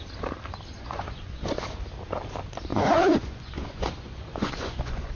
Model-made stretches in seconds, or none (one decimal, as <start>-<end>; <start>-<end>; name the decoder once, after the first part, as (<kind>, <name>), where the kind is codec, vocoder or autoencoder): 0.7-1.6 (vocoder, Vocos); 2.7-5.1